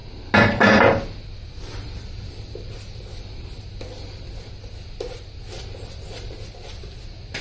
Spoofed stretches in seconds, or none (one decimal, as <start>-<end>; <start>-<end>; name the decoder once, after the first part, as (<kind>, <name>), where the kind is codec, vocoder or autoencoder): none